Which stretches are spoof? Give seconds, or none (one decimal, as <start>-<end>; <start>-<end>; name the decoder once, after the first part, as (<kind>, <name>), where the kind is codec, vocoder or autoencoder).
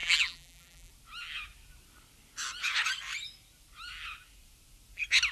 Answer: 0.0-0.9 (vocoder, BigVGAN v2)